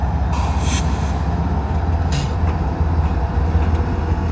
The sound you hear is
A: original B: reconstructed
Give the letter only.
A